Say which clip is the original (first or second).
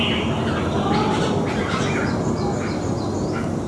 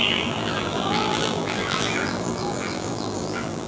first